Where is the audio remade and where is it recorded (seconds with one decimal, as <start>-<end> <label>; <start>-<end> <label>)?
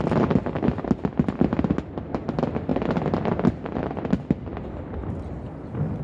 0.0-6.0 recorded